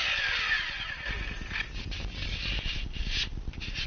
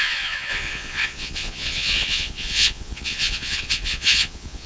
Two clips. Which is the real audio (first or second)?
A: first